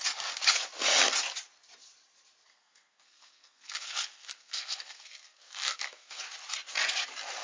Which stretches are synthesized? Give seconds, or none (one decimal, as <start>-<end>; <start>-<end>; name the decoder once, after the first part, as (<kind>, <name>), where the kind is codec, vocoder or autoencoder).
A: 2.5-6.2 (codec, SNAC)